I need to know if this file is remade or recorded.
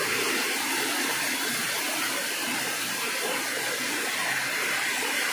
remade